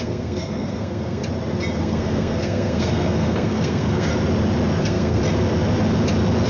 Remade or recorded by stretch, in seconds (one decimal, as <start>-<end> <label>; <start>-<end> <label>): 0.0-1.2 remade; 1.2-1.8 recorded; 1.8-4.1 remade; 4.1-4.8 recorded; 4.8-5.2 remade; 5.2-6.5 recorded